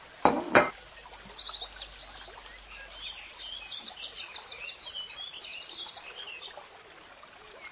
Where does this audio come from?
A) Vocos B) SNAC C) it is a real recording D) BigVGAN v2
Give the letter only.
C